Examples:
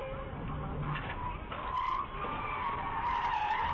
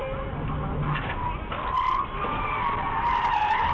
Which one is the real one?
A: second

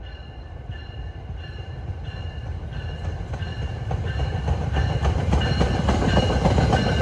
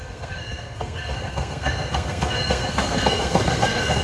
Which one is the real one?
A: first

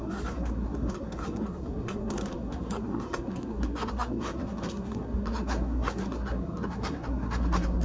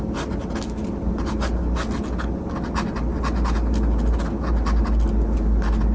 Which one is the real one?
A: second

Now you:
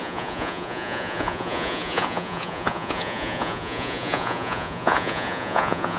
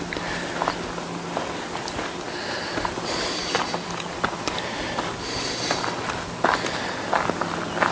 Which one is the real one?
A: second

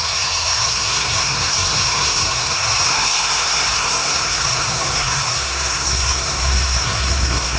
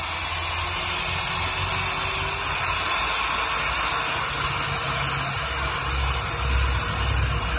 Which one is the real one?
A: second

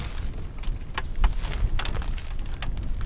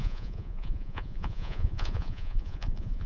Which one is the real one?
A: first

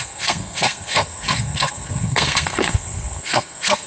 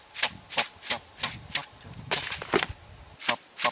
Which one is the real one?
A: second